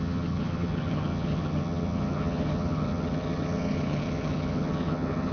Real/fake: fake